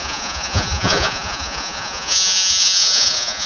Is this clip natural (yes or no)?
no